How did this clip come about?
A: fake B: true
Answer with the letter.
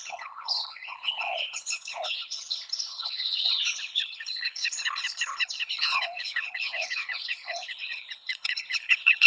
A